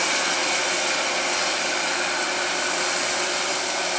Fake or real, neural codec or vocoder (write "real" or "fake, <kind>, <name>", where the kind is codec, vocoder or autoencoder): real